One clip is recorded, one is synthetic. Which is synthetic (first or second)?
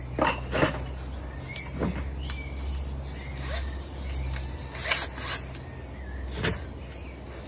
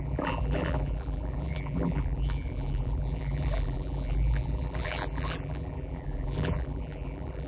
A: second